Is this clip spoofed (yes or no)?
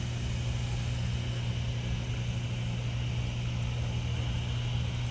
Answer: no